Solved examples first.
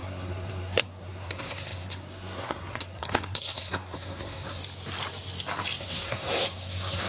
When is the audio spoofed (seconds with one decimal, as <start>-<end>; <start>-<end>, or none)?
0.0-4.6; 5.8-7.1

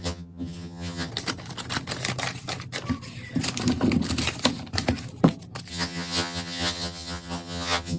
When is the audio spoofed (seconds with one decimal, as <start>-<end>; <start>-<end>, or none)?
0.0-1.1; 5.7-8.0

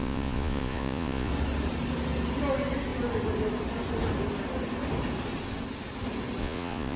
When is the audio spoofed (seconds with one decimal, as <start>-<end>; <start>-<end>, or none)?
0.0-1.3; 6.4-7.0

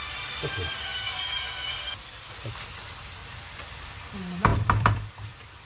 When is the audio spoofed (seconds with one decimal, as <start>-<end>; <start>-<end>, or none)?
0.0-0.9; 2.5-3.2; 3.9-5.6

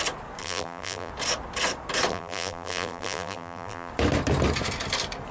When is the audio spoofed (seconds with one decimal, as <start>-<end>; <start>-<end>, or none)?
0.4-1.1; 2.1-3.9

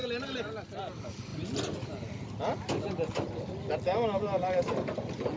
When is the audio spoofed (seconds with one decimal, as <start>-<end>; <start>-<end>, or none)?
none